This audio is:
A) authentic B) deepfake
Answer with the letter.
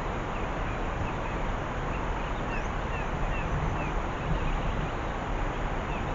A